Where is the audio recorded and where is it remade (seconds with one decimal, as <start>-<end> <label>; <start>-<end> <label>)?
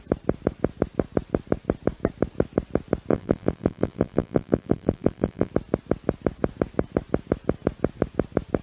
0.0-3.1 recorded; 3.1-5.5 remade; 5.5-8.6 recorded